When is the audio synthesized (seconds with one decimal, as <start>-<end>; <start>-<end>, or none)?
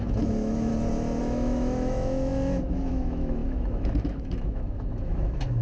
0.0-0.7; 1.2-5.6